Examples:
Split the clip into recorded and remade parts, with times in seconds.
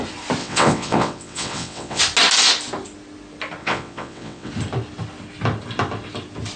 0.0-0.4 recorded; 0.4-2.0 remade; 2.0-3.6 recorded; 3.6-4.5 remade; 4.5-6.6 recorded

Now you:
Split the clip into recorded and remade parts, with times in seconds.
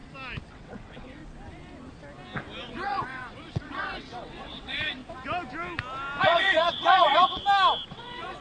0.0-0.5 recorded; 0.5-1.2 remade; 1.2-2.6 recorded; 2.6-5.0 remade; 5.0-6.2 recorded; 6.2-7.4 remade; 7.4-7.9 recorded; 7.9-8.4 remade